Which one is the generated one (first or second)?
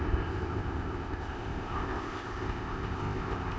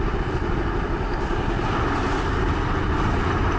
first